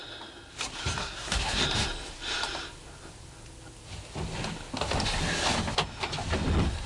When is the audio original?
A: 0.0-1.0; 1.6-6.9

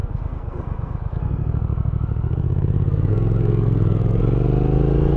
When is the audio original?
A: 4.2-5.2

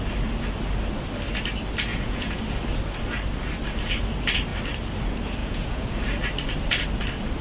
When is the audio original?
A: 0.0-1.9; 2.4-5.4; 5.9-7.4